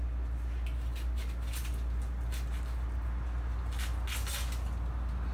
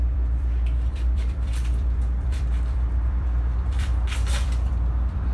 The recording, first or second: first